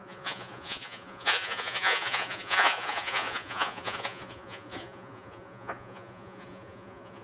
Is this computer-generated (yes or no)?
yes